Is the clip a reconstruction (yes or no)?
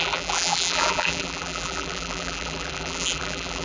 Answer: yes